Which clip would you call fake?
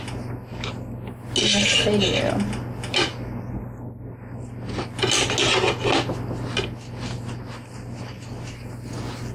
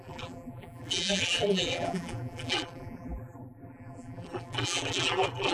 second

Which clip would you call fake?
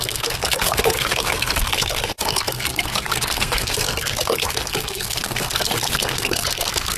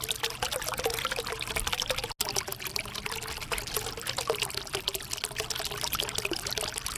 first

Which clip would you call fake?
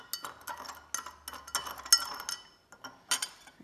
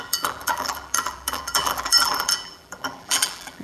second